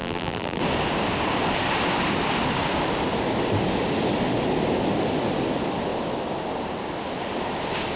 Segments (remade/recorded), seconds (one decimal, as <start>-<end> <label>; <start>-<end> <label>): 0.0-0.6 remade; 0.6-8.0 recorded